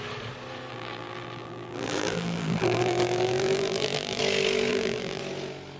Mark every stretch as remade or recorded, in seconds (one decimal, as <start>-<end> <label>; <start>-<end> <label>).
0.0-0.7 recorded; 0.7-4.2 remade; 4.2-4.7 recorded; 4.7-5.2 remade; 5.2-5.8 recorded